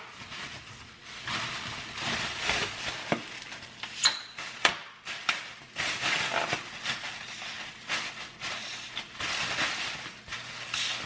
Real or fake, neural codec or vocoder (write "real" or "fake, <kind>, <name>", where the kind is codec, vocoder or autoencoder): real